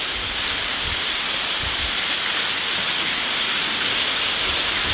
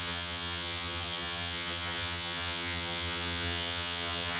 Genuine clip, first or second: first